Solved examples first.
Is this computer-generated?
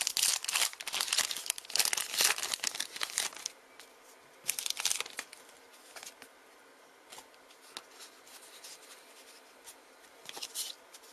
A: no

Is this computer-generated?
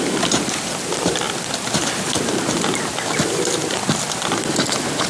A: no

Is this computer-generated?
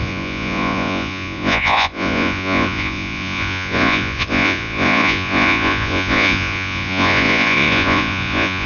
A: yes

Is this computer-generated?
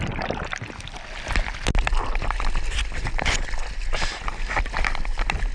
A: no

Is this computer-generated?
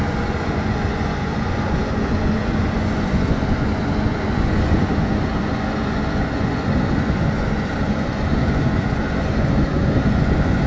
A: yes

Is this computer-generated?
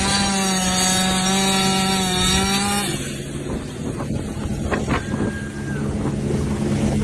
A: no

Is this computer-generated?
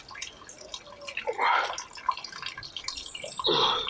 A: no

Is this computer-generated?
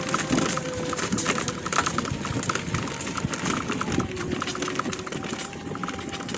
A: no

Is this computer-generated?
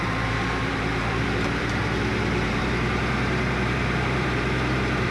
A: yes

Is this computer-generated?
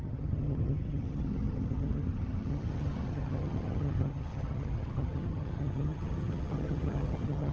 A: yes